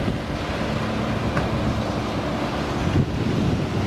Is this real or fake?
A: real